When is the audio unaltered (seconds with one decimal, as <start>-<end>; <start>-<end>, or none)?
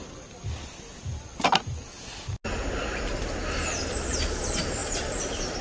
0.0-4.8